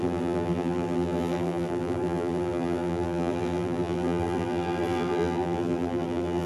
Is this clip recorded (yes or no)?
no